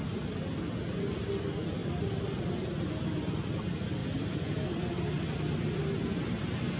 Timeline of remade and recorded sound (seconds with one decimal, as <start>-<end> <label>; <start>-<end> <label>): 0.0-1.8 recorded; 1.8-2.5 remade; 2.5-4.0 recorded; 4.0-5.4 remade; 5.4-6.8 recorded